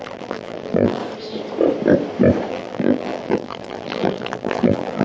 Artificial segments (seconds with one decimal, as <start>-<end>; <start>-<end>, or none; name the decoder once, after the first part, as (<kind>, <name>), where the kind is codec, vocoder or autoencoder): 0.0-1.0 (vocoder, BigVGAN v2); 2.5-5.0